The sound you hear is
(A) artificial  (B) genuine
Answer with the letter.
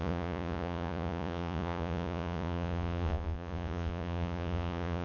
A